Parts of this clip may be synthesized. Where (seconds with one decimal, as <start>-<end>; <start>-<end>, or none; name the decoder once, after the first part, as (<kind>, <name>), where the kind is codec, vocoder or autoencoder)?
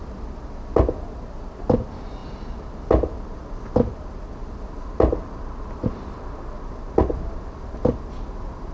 none